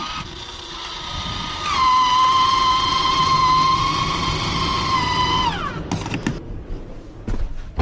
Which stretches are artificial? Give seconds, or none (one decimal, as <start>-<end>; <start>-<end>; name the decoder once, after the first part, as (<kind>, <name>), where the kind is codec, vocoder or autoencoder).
none